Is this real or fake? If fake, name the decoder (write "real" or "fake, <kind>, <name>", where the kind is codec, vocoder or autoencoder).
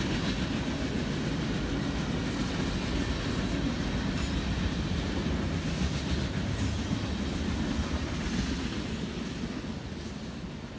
real